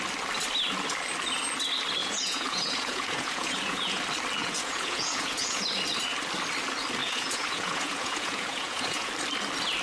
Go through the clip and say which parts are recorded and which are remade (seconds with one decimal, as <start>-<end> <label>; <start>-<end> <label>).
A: 0.0-2.0 recorded; 2.0-4.0 remade; 4.0-4.4 recorded; 4.4-5.6 remade; 5.6-7.0 recorded; 7.0-9.1 remade; 9.1-9.8 recorded

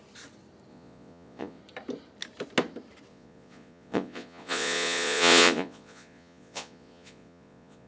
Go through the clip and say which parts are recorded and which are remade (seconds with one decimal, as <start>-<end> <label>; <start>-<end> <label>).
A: 0.0-0.7 recorded; 0.7-1.6 remade; 1.6-3.1 recorded; 3.1-7.9 remade